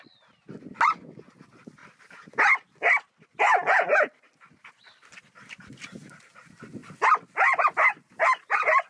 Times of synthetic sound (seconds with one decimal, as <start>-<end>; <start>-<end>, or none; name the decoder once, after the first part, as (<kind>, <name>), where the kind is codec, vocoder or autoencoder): none